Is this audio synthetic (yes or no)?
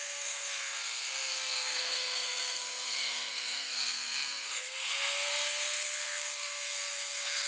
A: yes